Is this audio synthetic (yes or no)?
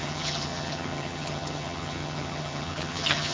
yes